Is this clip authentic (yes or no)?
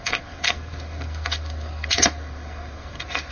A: no